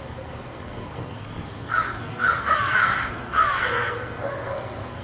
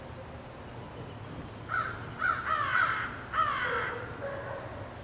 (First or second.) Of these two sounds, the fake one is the first